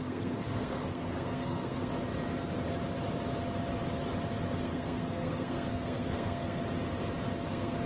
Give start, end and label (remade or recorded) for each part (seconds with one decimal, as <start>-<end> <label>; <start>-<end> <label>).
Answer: 0.0-1.9 remade; 1.9-4.6 recorded; 4.6-6.6 remade; 6.6-7.5 recorded; 7.5-7.9 remade